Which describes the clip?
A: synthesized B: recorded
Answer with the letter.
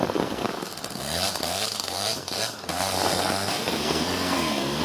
A